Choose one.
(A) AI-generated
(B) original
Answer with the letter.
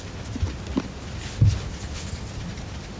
B